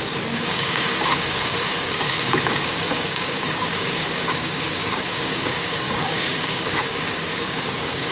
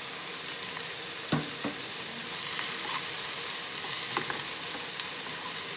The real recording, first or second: second